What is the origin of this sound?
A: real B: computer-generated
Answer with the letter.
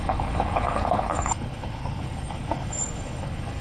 B